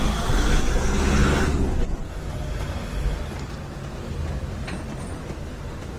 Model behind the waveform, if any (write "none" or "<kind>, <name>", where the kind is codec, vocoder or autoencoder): none